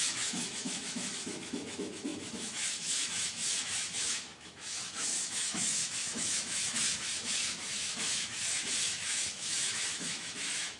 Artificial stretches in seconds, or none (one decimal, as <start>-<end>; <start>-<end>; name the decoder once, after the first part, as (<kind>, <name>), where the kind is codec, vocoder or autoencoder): 0.0-10.8 (autoencoder, DAC-VAE)